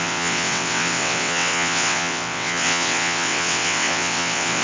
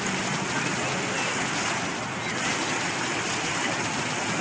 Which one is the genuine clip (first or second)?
second